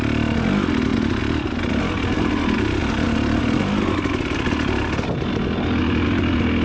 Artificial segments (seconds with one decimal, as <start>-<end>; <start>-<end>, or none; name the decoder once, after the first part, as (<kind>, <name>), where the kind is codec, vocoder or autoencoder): none